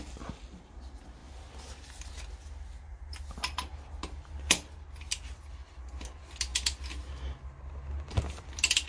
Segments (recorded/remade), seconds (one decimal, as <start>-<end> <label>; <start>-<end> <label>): 0.0-8.9 recorded